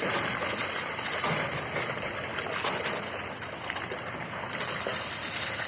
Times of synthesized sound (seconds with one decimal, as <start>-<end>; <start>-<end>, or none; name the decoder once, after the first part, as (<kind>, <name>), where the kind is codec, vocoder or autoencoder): none